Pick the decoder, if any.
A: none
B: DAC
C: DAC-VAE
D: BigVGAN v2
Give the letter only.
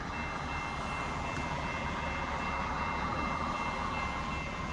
D